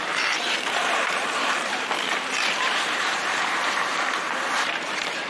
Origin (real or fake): fake